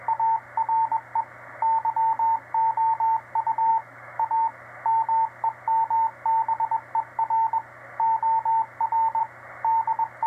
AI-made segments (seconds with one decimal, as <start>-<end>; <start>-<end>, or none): 3.7-4.5